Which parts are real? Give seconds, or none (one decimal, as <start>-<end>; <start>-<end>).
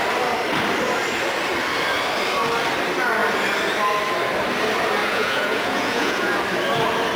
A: 0.0-5.0; 6.4-7.2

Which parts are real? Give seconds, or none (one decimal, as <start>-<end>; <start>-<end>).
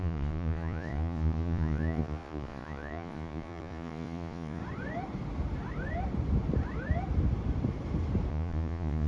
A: 4.6-8.3